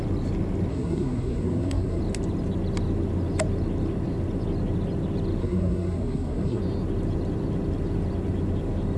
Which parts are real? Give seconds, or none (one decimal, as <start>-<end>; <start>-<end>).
0.0-0.7; 2.0-5.4; 6.6-9.0